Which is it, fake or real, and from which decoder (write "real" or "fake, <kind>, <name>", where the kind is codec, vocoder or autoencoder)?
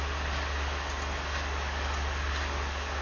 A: fake, codec, DAC